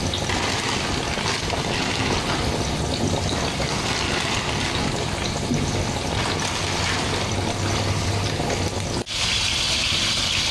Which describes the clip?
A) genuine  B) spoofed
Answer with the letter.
A